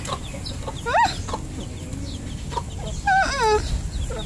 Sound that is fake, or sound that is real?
real